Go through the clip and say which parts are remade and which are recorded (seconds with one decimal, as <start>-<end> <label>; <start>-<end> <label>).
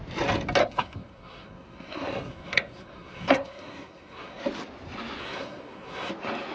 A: 0.0-0.6 recorded; 0.6-4.4 remade; 4.4-5.2 recorded; 5.2-6.1 remade; 6.1-6.5 recorded